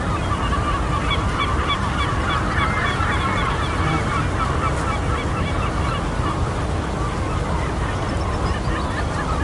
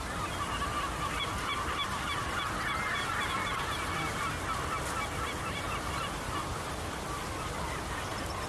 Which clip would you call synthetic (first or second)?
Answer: second